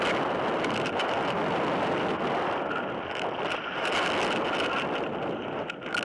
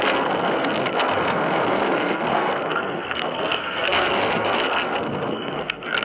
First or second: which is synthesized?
second